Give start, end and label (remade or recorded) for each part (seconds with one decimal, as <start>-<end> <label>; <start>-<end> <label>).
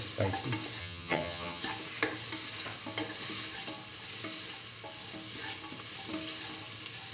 0.0-0.8 recorded; 0.8-1.6 remade; 1.6-7.1 recorded